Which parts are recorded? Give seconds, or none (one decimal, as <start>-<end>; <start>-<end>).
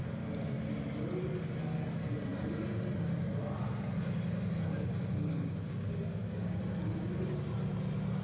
0.0-4.7; 6.6-8.2